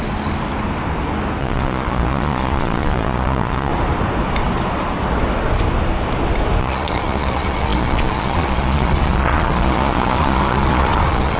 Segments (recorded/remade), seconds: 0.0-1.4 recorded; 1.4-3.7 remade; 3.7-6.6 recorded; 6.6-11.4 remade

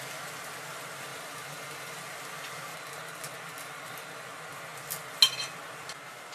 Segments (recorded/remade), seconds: 0.0-1.1 recorded; 1.1-2.0 remade; 2.0-2.7 recorded; 2.7-4.3 remade; 4.3-6.3 recorded

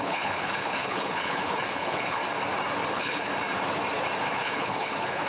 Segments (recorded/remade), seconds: 0.0-2.2 remade; 2.2-2.9 recorded; 2.9-3.3 remade; 3.3-4.3 recorded; 4.3-5.3 remade

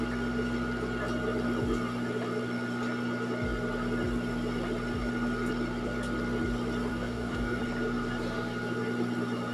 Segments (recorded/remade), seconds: 0.0-6.9 recorded; 6.9-7.6 remade; 7.6-9.5 recorded

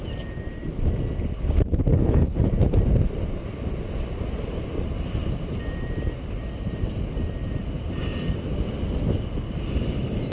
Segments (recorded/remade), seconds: 0.0-1.9 recorded; 1.9-2.5 remade; 2.5-10.3 recorded

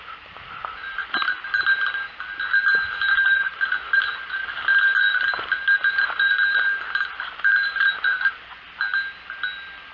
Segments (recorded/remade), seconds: 0.0-1.0 remade; 1.0-3.1 recorded; 3.1-9.9 remade

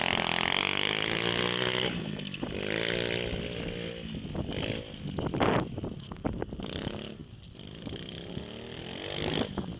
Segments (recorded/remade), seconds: 0.0-9.8 recorded

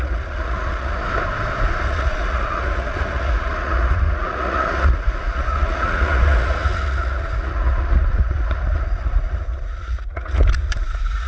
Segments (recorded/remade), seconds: 0.0-1.0 remade; 1.0-1.8 recorded; 1.8-11.3 remade